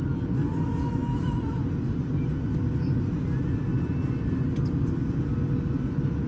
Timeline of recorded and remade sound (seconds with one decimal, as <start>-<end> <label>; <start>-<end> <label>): 0.0-6.3 recorded

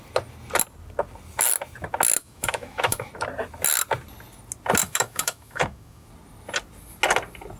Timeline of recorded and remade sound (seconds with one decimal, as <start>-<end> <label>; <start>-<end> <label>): 0.0-2.2 recorded; 2.2-3.1 remade; 3.1-4.8 recorded; 4.8-6.1 remade; 6.1-7.6 recorded

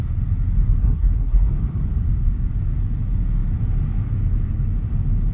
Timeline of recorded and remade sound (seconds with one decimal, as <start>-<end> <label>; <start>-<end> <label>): 0.0-0.8 recorded; 0.8-1.5 remade; 1.5-5.3 recorded

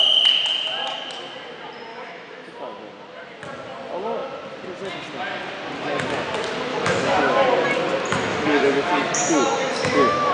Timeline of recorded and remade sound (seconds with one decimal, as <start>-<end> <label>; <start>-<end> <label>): 0.0-1.9 recorded; 1.9-2.5 remade; 2.5-6.7 recorded; 6.7-7.2 remade; 7.2-8.3 recorded; 8.3-10.3 remade